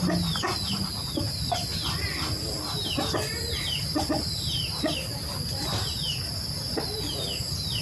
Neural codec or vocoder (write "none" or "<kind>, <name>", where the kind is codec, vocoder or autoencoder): none